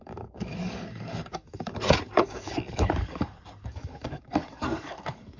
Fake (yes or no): yes